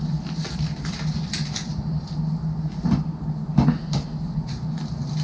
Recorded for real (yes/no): yes